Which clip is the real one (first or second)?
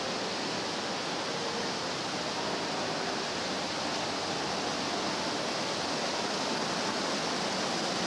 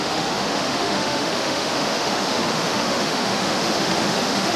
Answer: first